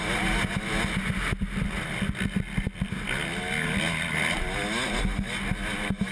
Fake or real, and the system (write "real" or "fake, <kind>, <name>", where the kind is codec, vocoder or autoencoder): real